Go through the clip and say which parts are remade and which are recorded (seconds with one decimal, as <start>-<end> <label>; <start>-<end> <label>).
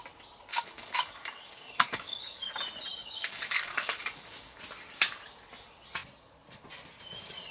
0.0-0.5 recorded; 0.5-2.5 remade; 2.5-3.0 recorded; 3.0-4.6 remade; 4.6-7.5 recorded